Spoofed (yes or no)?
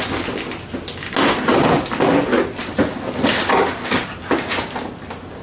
no